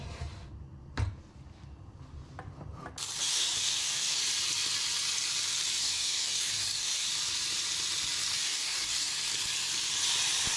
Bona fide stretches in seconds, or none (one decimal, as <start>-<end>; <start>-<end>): 0.0-3.2; 4.2-5.8; 7.1-8.3; 9.1-10.6